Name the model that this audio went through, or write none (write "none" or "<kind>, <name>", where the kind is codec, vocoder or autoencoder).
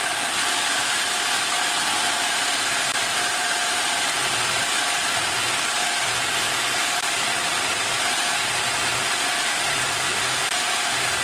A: none